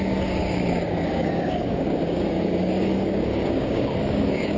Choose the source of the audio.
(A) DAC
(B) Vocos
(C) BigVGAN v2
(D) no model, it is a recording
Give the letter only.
A